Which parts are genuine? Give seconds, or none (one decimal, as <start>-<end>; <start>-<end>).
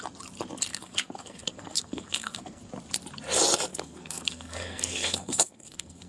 0.0-0.7; 2.6-3.7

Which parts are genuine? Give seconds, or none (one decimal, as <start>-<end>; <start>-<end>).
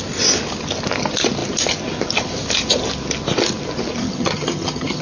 0.0-4.0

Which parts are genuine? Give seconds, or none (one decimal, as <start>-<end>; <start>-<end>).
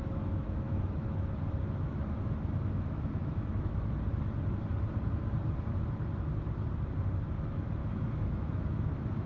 3.8-7.8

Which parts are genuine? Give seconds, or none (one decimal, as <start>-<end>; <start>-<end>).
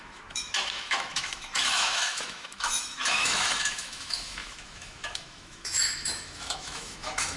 none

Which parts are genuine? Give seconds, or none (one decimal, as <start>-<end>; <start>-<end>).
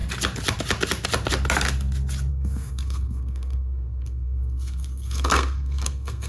0.0-2.3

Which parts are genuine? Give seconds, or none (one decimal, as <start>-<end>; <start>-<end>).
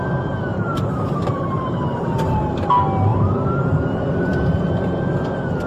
0.0-0.5; 2.5-3.1; 4.6-5.7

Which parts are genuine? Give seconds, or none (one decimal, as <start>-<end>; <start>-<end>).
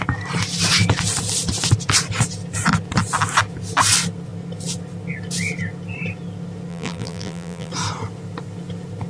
0.0-6.7; 7.7-9.1